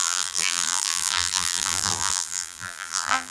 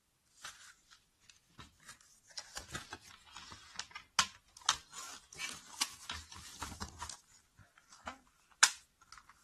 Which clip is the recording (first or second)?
second